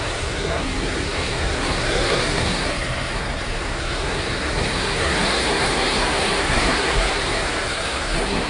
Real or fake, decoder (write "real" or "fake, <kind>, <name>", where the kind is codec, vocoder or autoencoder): fake, codec, SNAC